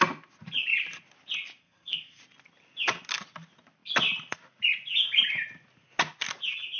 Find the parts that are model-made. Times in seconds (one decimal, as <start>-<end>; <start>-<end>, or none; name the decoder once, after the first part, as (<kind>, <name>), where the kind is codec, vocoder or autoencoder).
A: 1.6-2.2 (codec, SNAC)